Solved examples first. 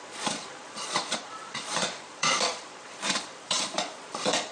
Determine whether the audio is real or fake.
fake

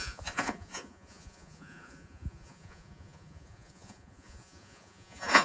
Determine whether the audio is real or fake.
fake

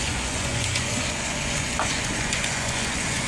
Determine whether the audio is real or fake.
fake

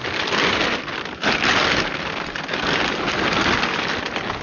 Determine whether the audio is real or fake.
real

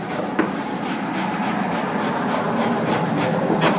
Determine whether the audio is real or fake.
real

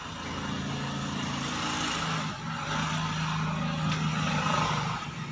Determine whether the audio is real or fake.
real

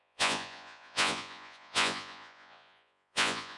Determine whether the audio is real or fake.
fake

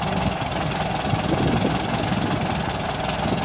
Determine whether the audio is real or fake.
real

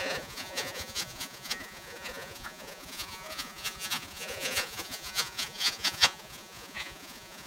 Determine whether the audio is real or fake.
fake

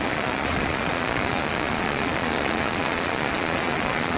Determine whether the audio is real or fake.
fake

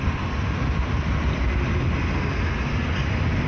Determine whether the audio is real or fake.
real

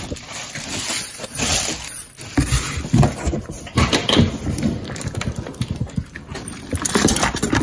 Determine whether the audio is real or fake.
real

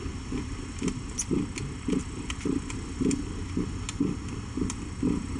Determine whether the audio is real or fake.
real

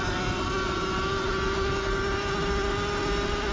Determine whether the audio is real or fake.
real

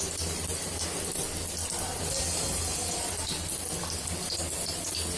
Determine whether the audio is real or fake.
real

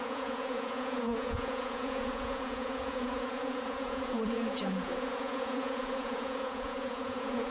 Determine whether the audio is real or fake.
fake